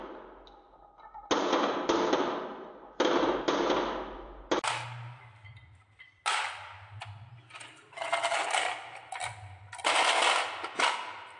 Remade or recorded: recorded